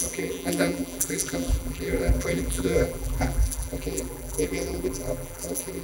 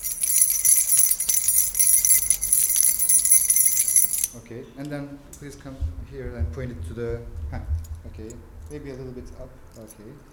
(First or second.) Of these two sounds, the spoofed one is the first